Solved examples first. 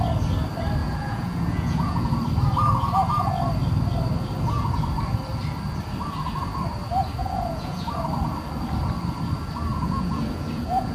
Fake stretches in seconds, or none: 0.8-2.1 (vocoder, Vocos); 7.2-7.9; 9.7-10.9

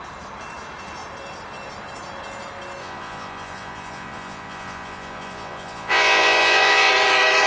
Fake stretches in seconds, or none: 2.8-6.9 (vocoder, Vocos)

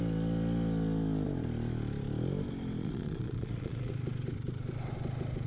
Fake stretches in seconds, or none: 2.8-3.9 (vocoder, Vocos)

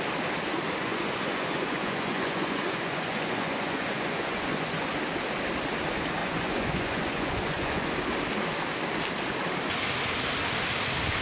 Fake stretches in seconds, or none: 0.8-5.0 (vocoder, Vocos); 6.2-7.9

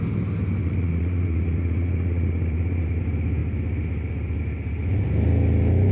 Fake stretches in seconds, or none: 0.6-3.0 (vocoder, Vocos)

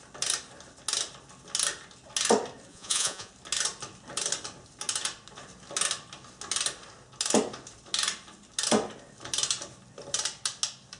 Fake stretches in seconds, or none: 2.7-3.3 (vocoder, Vocos)

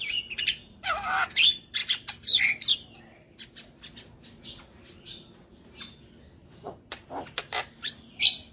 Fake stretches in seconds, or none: 6.5-7.0 (vocoder, Vocos)

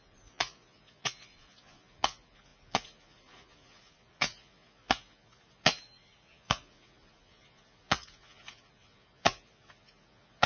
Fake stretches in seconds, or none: 0.0-10.5 (vocoder, Vocos)